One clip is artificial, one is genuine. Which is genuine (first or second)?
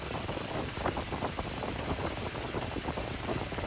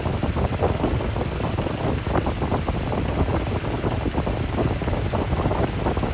second